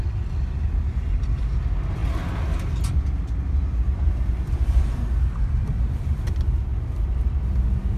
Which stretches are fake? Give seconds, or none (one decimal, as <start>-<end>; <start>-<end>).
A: none